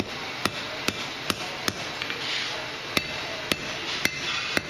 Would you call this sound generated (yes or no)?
no